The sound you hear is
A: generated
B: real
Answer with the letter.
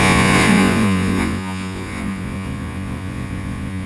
A